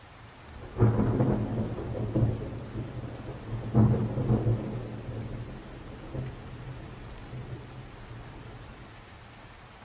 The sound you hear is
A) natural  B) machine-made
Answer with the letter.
A